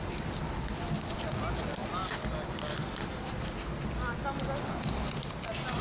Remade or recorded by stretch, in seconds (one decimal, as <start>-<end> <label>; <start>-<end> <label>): 0.0-5.8 recorded